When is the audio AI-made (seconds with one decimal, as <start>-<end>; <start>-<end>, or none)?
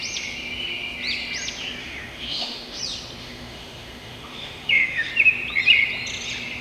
1.8-2.8; 3.2-5.1